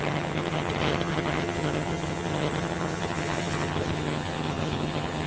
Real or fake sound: fake